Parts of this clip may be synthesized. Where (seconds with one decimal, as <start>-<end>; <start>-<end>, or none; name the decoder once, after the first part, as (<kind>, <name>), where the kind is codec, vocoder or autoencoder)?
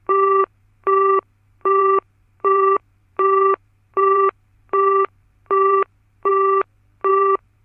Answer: 0.0-6.3 (vocoder, BigVGAN v2); 7.1-7.6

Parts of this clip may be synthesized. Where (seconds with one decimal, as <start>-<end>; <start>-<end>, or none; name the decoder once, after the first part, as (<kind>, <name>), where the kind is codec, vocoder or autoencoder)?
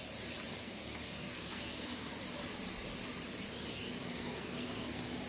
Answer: 0.6-2.1 (codec, SNAC); 3.7-5.3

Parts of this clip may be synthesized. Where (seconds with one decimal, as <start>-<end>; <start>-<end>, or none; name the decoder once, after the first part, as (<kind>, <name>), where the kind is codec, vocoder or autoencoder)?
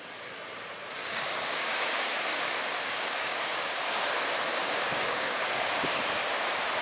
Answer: 1.0-4.0 (codec, DAC); 4.5-5.9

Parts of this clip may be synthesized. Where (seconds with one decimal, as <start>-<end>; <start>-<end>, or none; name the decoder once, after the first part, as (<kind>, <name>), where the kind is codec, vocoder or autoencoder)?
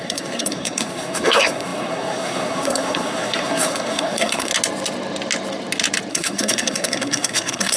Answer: 0.0-4.5 (codec, SNAC); 6.1-7.8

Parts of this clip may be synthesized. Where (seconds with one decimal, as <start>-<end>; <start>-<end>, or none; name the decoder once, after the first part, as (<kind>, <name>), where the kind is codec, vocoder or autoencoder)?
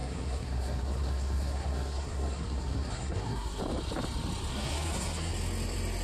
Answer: 0.0-3.6 (codec, SNAC); 4.5-5.3